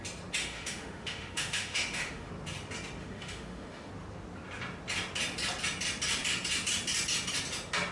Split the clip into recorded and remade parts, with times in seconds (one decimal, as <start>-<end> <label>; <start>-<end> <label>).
0.0-0.4 recorded; 0.4-2.3 remade; 2.3-3.0 recorded; 3.0-3.9 remade; 3.9-7.9 recorded